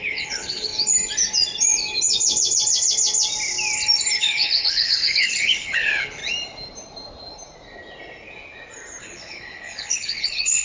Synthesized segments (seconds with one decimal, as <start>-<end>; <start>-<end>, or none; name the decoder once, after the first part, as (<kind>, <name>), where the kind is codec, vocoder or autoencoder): 0.0-0.7 (codec, HILCodec); 4.2-6.2; 9.0-10.6

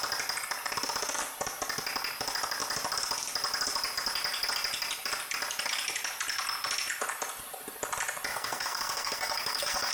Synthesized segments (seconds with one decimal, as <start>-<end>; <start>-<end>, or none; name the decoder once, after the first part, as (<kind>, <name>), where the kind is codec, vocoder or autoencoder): 8.3-9.9 (codec, SNAC)